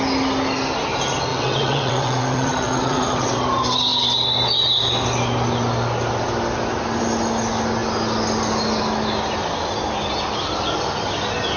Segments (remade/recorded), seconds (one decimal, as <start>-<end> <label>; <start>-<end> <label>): 0.0-1.3 recorded; 1.3-3.4 remade; 3.4-11.6 recorded